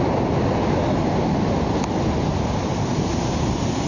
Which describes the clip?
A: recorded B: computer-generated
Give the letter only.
A